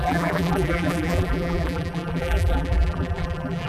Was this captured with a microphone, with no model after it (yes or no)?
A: no